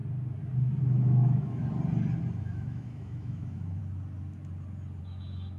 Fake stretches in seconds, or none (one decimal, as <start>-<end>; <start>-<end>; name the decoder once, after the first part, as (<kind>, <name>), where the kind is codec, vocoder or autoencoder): 0.8-1.6 (autoencoder, DAC-VAE); 2.4-3.8; 5.0-5.6